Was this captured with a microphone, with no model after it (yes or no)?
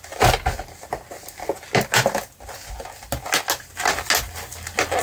yes